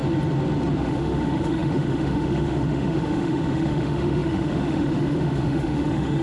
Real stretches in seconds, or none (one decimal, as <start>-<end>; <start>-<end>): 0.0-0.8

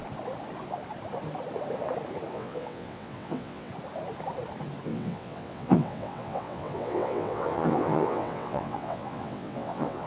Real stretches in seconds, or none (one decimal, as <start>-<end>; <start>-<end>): 0.0-2.3; 3.7-4.9

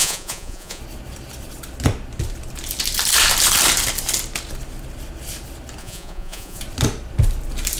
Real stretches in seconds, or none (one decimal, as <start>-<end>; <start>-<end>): 0.8-5.8; 6.6-7.8

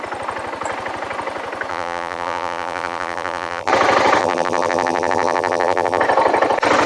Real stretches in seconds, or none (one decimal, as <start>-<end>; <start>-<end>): 0.0-1.7; 3.7-4.2; 6.0-6.9

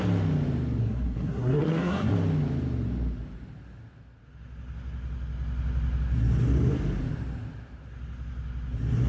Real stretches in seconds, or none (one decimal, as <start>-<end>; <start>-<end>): 0.0-0.8; 2.1-9.1

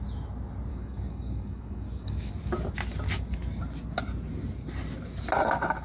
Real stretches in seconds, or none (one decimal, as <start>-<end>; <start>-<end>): 0.0-0.7; 2.3-5.8

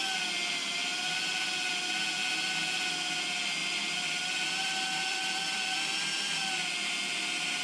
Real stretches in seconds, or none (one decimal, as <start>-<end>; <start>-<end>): 0.0-3.6; 6.0-7.6